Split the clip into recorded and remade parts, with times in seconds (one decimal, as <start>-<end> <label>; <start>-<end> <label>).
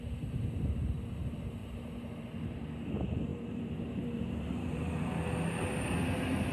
0.0-1.6 recorded; 1.6-2.2 remade; 2.2-3.3 recorded; 3.3-5.1 remade; 5.1-6.5 recorded